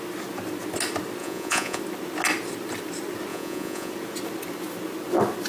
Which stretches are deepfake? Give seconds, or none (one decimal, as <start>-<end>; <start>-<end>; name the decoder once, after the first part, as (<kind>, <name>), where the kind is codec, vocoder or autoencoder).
1.2-1.8 (vocoder, Vocos); 3.3-3.9